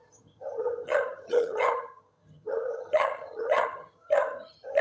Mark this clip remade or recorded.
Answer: remade